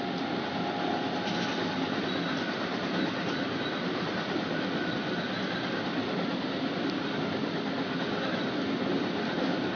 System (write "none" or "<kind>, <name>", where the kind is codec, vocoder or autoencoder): none